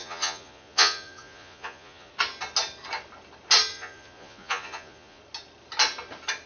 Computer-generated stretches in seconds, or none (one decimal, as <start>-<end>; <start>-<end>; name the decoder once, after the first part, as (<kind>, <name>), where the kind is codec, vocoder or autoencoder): 0.0-2.1 (vocoder, Vocos); 3.7-5.2